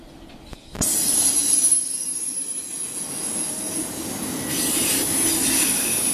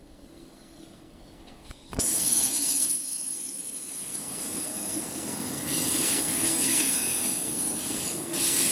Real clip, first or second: first